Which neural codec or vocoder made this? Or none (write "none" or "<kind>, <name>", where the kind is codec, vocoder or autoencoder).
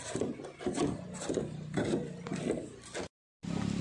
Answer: none